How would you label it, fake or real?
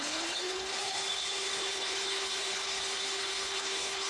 fake